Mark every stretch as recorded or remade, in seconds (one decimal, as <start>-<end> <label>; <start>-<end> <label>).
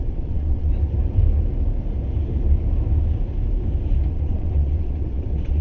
0.0-0.7 remade; 0.7-4.1 recorded; 4.1-5.6 remade